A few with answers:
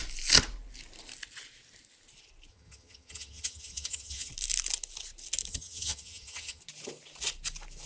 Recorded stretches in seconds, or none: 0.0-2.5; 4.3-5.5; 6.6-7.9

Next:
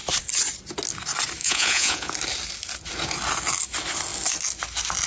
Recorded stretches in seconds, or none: 0.0-1.4; 2.1-5.1

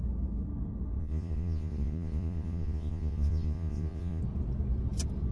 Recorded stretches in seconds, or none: 0.0-1.0; 4.2-5.3

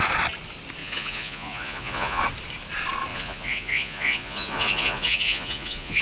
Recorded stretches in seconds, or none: 0.0-0.8; 2.2-3.1

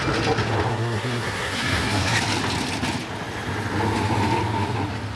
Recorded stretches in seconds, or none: 0.0-0.7; 2.2-5.2

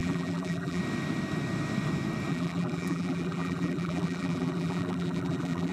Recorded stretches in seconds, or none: 0.8-2.3

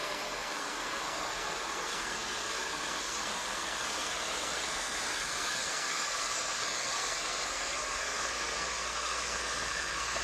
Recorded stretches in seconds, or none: none